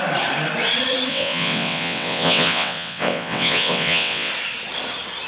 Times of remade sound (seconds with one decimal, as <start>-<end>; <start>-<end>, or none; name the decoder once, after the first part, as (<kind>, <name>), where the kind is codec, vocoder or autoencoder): 1.1-4.3 (vocoder, WaveNeXt)